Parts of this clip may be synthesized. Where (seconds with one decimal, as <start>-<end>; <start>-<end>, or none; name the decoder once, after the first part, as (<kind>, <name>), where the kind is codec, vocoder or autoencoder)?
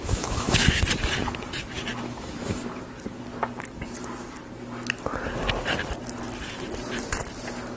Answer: 0.0-0.8 (autoencoder, DAC-VAE); 1.9-2.6